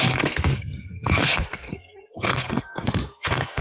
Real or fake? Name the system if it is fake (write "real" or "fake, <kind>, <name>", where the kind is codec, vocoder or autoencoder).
fake, codec, SNAC